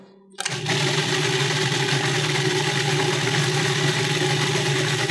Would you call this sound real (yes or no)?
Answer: yes